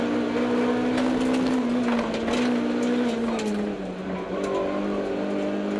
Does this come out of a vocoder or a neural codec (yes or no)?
no